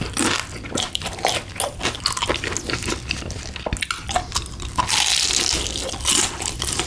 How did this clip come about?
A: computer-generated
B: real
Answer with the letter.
B